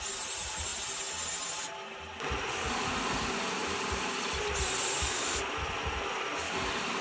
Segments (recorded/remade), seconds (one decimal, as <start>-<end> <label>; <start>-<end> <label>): 0.0-7.0 recorded